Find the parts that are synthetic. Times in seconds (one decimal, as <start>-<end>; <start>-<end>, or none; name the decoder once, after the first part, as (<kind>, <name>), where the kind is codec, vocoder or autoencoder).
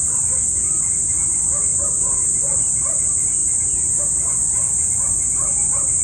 none